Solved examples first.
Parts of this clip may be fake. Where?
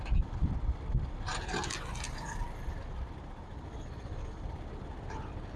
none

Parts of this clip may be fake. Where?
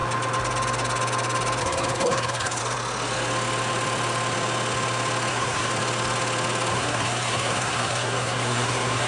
1.6-2.6 (codec, SNAC); 5.3-5.7; 6.7-9.1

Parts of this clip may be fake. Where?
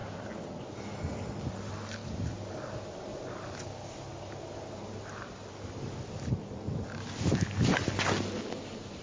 none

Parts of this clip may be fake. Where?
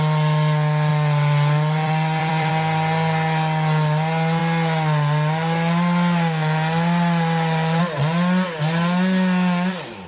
0.9-2.5 (vocoder, BigVGAN v2)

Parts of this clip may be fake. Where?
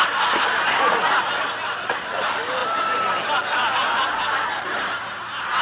none